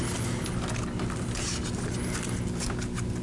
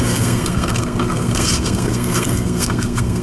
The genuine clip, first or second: first